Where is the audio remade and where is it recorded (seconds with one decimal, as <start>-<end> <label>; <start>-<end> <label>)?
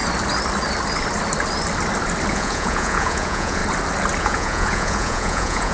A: 0.0-2.3 recorded; 2.3-3.6 remade; 3.6-4.2 recorded; 4.2-5.7 remade